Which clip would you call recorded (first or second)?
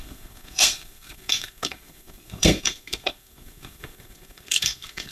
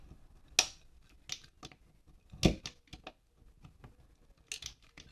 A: second